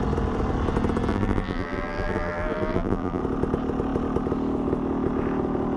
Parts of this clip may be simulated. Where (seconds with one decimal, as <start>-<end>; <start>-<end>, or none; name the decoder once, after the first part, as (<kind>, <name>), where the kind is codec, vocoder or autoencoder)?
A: 1.1-3.2 (vocoder, BigVGAN v2)